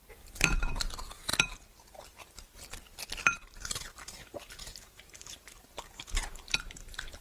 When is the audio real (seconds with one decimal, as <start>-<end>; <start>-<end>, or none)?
1.3-2.0